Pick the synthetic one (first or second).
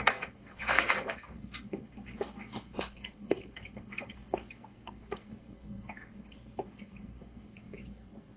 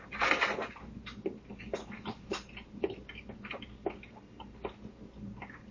first